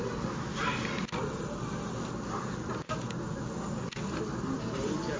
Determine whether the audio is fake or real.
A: real